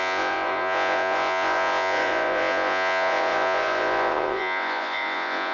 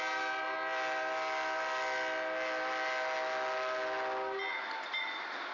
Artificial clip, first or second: first